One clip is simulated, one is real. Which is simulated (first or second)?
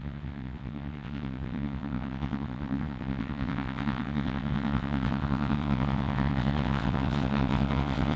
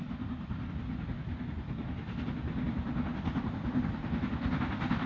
first